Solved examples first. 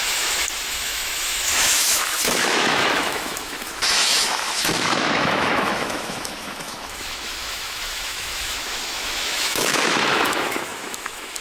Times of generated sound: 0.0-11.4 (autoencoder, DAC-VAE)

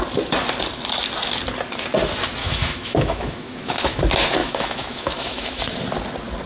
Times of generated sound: 2.4-4.0 (autoencoder, DAC-VAE); 4.4-5.6

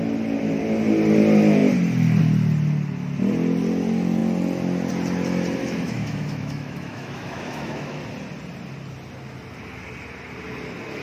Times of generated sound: 5.6-8.0 (autoencoder, DAC-VAE)

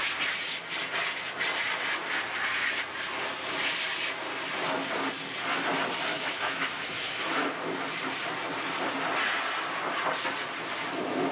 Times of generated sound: 6.1-7.4 (autoencoder, DAC-VAE)